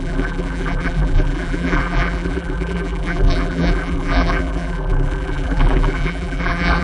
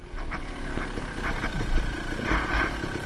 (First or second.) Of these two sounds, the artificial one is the first